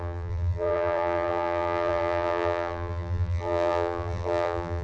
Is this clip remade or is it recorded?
remade